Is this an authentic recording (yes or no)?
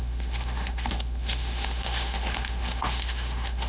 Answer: no